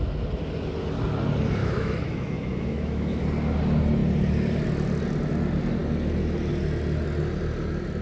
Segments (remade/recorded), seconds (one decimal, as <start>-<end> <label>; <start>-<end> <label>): 0.0-1.6 recorded; 1.6-3.2 remade; 3.2-8.0 recorded